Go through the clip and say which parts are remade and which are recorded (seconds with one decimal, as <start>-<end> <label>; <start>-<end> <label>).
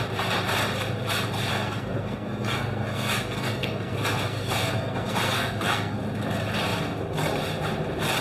0.0-1.5 recorded; 1.5-6.0 remade; 6.0-8.2 recorded